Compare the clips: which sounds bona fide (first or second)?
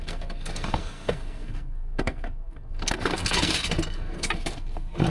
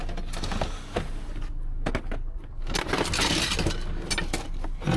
second